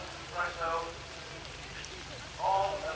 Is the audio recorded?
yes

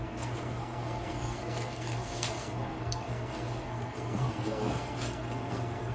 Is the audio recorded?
no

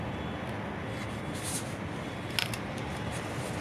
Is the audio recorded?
yes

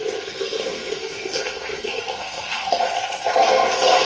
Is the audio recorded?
no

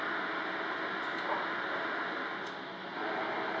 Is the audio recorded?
yes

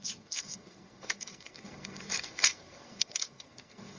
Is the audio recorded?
no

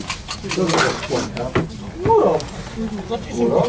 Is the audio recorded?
yes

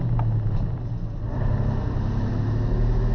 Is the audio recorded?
yes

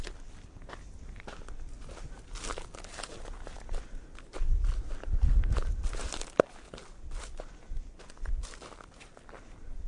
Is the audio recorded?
yes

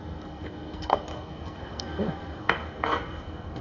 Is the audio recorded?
no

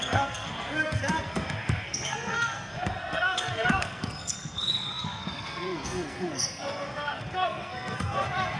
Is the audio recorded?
no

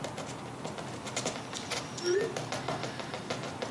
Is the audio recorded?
yes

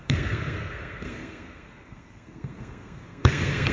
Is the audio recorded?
no